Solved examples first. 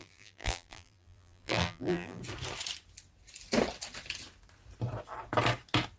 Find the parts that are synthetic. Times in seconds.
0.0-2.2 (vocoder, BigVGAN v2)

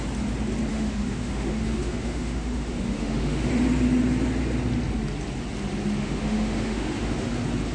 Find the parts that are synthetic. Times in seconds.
0.7-3.5 (autoencoder, DAC-VAE); 6.0-7.3

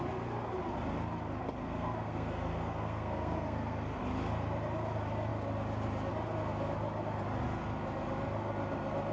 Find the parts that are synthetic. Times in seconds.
1.6-4.0 (codec, SNAC)